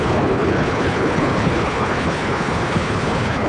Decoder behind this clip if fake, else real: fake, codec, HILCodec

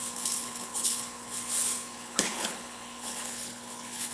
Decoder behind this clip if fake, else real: fake, codec, HILCodec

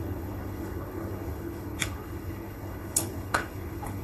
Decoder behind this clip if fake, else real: fake, codec, HILCodec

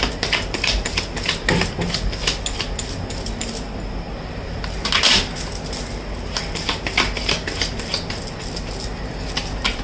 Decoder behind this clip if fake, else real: real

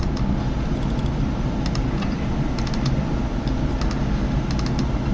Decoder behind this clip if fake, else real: real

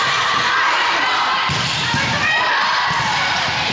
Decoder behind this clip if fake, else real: real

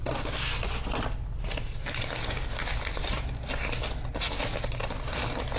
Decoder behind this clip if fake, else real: real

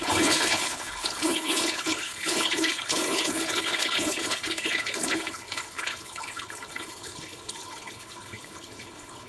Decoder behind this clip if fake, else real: fake, codec, HILCodec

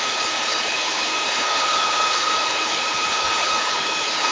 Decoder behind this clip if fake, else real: fake, codec, HILCodec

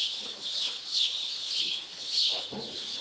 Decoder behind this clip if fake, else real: fake, codec, HILCodec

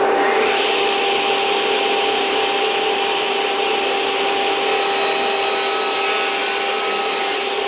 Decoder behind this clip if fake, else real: real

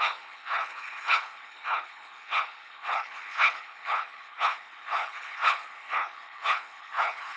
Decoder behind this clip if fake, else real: fake, codec, HILCodec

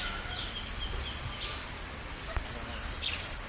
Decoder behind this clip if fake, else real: real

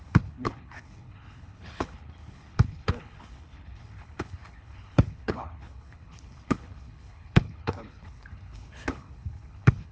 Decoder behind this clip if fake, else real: fake, codec, HILCodec